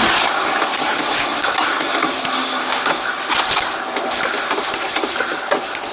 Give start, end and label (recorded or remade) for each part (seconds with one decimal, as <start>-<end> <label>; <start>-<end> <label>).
0.0-2.4 recorded; 2.4-2.9 remade; 2.9-5.9 recorded